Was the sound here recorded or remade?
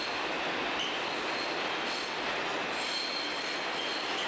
recorded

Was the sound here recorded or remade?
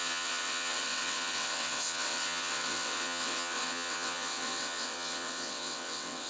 remade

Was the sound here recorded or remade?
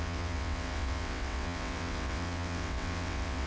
remade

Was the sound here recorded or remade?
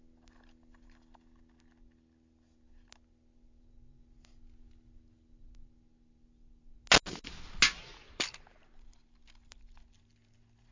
recorded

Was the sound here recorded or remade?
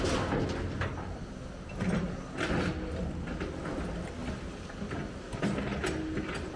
recorded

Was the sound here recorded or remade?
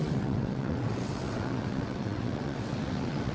remade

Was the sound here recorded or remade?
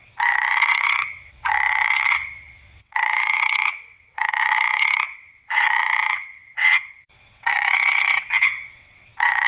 remade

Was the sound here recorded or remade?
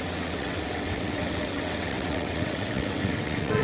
remade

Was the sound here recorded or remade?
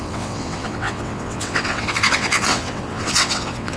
remade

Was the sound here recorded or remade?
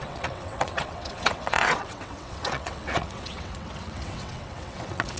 remade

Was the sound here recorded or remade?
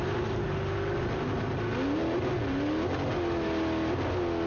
recorded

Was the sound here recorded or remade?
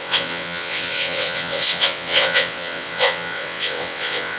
remade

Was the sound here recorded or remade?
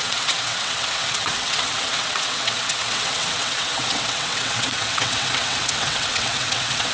remade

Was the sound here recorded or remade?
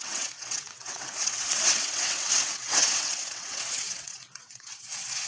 remade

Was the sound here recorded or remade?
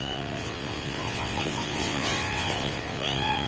remade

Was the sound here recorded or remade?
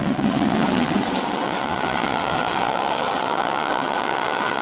remade